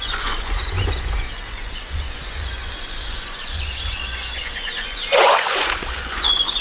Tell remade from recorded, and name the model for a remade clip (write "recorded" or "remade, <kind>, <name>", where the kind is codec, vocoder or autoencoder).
remade, vocoder, Vocos